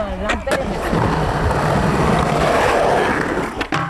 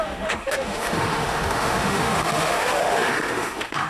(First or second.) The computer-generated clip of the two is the second